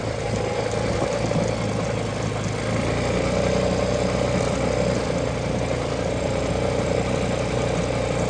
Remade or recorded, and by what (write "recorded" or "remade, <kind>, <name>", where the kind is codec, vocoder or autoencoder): recorded